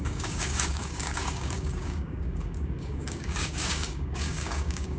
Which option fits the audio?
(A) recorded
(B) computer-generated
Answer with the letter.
B